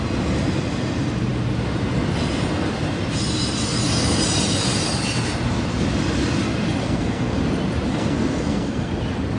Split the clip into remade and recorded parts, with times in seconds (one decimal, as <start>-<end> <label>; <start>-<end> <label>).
0.0-6.8 recorded; 6.8-7.4 remade; 7.4-7.9 recorded; 7.9-8.9 remade; 8.9-9.4 recorded